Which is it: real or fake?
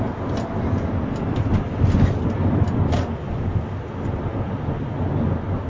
real